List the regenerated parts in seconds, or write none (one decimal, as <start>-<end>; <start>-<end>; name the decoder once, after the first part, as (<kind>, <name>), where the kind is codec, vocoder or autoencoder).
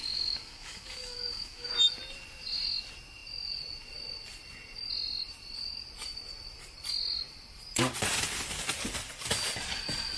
0.0-1.7 (codec, DAC)